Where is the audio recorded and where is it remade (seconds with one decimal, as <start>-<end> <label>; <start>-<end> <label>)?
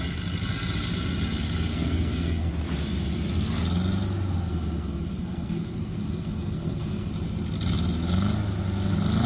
0.0-1.7 recorded; 1.7-2.5 remade; 2.5-4.5 recorded; 4.5-7.1 remade; 7.1-9.3 recorded